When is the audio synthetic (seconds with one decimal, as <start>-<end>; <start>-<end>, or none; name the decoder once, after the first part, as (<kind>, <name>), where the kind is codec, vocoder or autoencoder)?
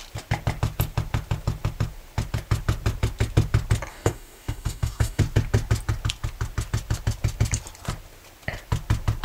3.9-5.2 (codec, DAC)